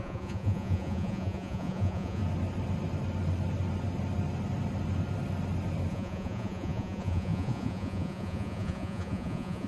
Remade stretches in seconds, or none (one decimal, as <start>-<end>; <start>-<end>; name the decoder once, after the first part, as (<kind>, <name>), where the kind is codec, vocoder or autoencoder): 0.0-2.2 (vocoder, Vocos); 5.9-9.7